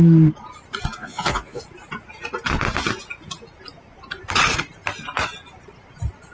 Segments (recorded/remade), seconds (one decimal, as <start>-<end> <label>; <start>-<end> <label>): 0.0-1.0 recorded; 1.0-1.6 remade; 1.6-6.3 recorded